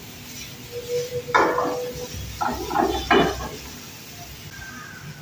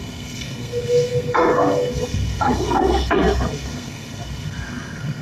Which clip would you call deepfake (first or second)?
second